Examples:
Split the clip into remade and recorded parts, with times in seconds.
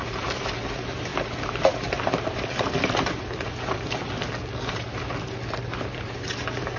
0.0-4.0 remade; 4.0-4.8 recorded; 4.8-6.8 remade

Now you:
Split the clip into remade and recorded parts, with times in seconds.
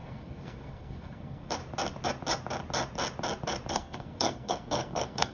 0.0-1.6 remade; 1.6-3.7 recorded; 3.7-5.3 remade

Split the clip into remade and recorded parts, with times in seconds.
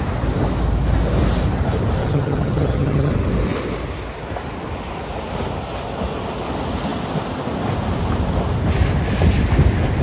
0.0-2.0 recorded; 2.0-3.1 remade; 3.1-10.0 recorded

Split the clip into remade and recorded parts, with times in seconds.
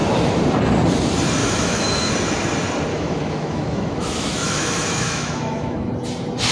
0.0-1.4 recorded; 1.4-2.1 remade; 2.1-2.9 recorded; 2.9-5.9 remade; 5.9-6.5 recorded